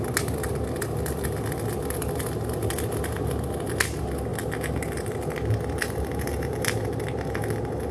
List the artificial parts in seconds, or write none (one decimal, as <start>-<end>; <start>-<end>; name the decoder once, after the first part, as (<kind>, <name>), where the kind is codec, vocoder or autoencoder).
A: none